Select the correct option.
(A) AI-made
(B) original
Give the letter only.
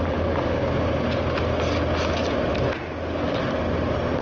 B